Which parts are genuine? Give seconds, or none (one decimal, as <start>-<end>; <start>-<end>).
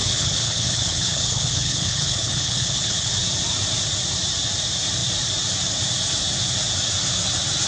3.1-7.7